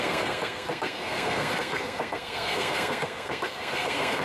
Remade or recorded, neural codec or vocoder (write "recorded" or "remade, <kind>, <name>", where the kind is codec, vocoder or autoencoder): remade, codec, SNAC